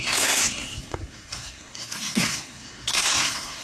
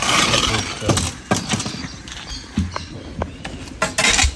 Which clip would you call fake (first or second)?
first